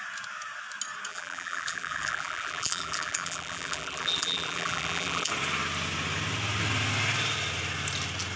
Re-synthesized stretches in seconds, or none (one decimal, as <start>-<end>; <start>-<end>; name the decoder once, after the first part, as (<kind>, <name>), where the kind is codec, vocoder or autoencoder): 1.1-5.3 (vocoder, BigVGAN v2)

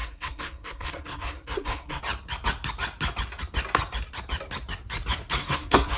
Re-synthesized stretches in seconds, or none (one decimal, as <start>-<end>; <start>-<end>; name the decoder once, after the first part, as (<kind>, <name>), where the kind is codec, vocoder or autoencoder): 0.0-2.0 (codec, SNAC); 5.4-6.0